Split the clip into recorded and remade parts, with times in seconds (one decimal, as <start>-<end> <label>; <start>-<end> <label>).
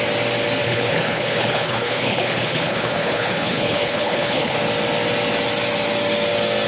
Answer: 0.0-0.6 recorded; 0.6-4.6 remade; 4.6-6.7 recorded